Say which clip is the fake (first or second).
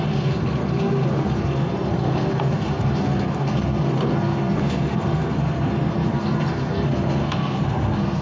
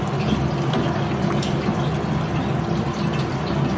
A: first